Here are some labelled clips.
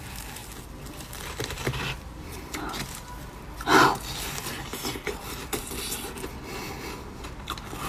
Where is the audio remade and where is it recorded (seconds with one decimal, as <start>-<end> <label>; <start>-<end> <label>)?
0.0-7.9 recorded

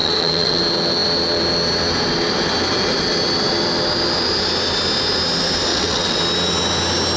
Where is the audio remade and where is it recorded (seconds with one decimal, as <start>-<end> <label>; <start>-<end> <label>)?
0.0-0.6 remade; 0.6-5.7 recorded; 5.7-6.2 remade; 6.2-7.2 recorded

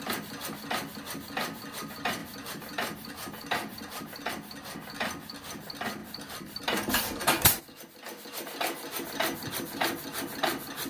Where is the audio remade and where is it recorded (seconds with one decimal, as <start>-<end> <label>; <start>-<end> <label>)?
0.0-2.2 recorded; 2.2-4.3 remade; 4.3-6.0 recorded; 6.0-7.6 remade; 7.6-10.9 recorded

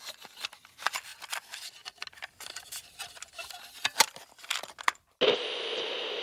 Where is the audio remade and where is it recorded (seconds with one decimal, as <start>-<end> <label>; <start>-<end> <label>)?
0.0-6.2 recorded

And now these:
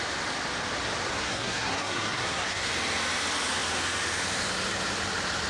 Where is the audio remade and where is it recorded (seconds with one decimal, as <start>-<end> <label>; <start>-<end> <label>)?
0.0-1.1 recorded; 1.1-2.7 remade; 2.7-5.5 recorded

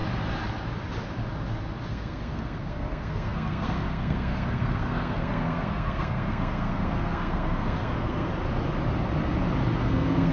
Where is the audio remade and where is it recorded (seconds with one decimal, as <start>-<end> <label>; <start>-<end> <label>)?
0.0-1.9 recorded; 1.9-8.3 remade; 8.3-9.8 recorded; 9.8-10.3 remade

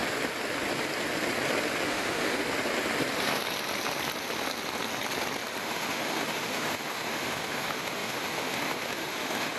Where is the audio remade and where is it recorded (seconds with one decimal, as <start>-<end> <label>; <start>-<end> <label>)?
0.0-1.9 recorded; 1.9-2.4 remade; 2.4-5.6 recorded; 5.6-9.6 remade

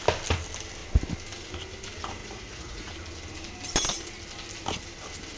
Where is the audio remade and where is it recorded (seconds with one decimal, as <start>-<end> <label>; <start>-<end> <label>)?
0.0-2.2 recorded; 2.2-2.9 remade; 2.9-5.4 recorded